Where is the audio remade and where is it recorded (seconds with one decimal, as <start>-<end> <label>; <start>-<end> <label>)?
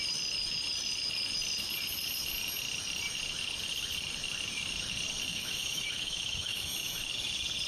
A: 0.0-5.3 recorded; 5.3-7.1 remade; 7.1-7.7 recorded